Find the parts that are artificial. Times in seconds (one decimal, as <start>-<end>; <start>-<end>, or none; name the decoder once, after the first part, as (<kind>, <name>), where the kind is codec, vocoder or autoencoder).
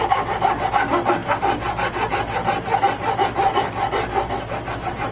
none